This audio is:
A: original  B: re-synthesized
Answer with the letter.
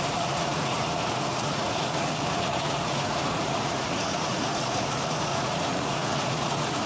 B